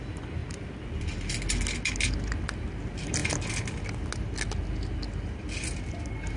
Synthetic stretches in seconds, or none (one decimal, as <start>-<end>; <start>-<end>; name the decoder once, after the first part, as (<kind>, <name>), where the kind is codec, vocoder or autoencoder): none